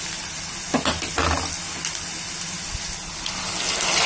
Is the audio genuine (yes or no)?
yes